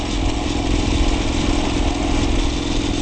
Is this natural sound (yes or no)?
yes